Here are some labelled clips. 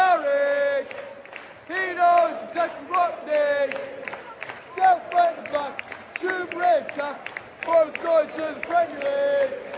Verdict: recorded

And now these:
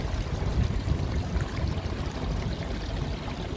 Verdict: recorded